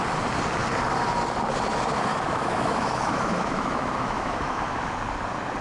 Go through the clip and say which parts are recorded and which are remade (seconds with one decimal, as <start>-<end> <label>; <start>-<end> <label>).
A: 0.0-2.1 recorded; 2.1-4.9 remade; 4.9-5.6 recorded